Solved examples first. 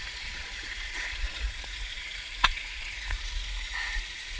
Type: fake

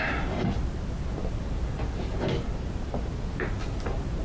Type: real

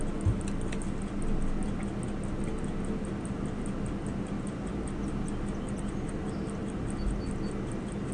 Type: real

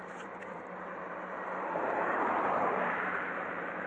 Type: fake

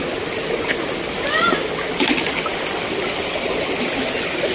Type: real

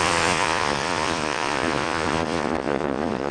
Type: fake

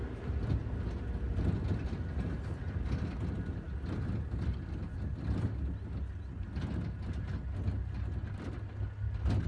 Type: real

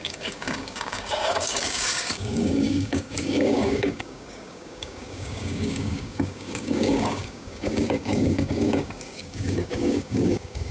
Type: fake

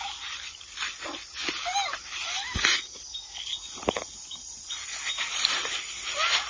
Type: real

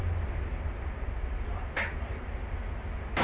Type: real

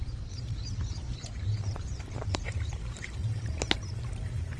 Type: fake